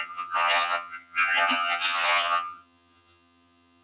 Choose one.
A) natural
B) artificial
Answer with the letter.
B